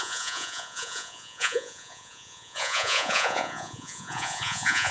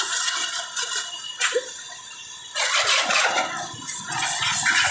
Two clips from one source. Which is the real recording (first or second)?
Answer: second